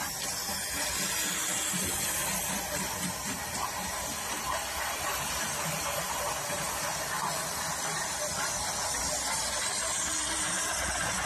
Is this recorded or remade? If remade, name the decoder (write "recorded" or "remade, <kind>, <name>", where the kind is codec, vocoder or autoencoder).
recorded